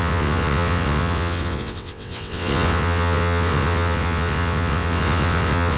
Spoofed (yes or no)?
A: yes